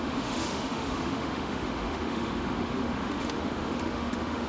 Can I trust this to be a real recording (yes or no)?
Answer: no